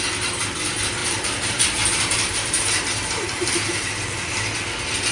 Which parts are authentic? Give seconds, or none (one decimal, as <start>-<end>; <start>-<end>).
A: 0.0-1.0; 4.1-5.1

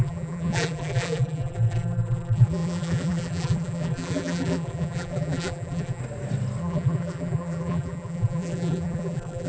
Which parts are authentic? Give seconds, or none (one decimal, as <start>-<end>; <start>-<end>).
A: 6.0-6.6

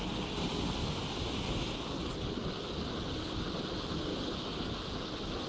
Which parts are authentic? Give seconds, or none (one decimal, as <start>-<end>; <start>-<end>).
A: 0.0-0.8; 1.4-5.5